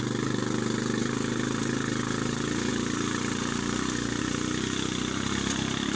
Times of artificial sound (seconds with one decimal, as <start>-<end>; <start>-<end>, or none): none